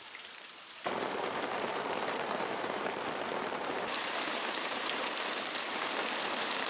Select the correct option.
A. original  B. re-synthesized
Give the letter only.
B